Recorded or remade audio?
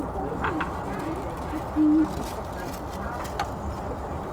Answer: recorded